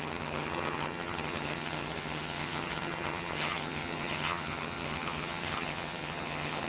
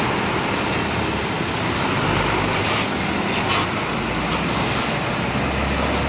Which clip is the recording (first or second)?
second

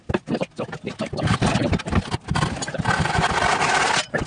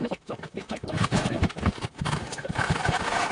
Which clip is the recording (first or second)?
first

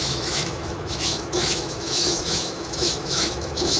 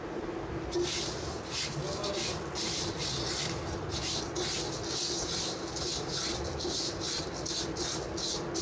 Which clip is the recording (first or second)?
second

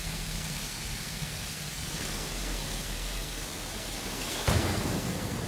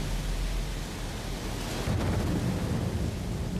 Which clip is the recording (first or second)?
second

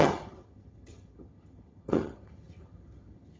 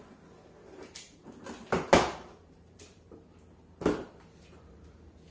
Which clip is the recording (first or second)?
second